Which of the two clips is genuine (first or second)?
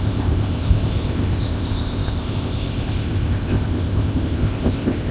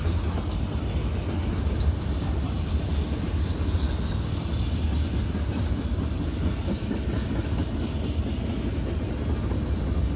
second